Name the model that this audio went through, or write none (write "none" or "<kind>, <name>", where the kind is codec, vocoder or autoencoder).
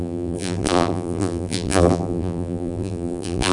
vocoder, BigVGAN v2